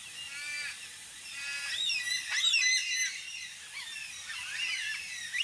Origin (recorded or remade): recorded